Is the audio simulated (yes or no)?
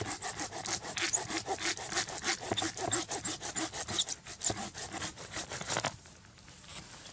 no